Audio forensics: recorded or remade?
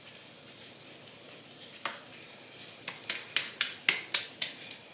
recorded